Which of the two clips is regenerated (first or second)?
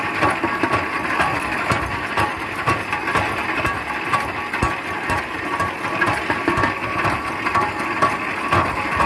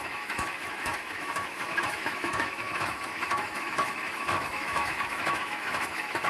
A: second